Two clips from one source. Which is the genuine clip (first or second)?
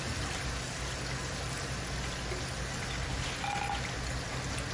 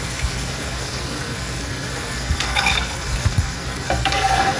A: first